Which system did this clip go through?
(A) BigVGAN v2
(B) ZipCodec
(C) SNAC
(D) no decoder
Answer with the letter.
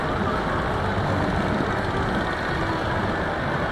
D